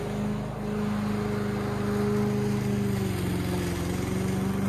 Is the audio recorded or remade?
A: recorded